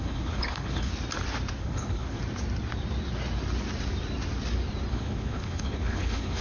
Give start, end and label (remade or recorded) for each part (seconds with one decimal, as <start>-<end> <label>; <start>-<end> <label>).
0.0-0.9 remade; 0.9-1.6 recorded; 1.6-2.2 remade; 2.2-4.9 recorded; 4.9-6.4 remade